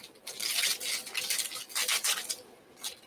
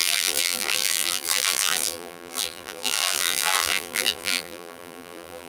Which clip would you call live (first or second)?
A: first